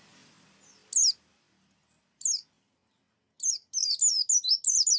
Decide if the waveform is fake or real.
real